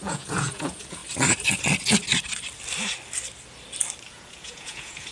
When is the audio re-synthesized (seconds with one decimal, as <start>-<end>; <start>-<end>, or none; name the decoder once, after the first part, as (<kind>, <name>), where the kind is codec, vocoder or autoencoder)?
0.0-1.0 (vocoder, Vocos); 4.1-5.1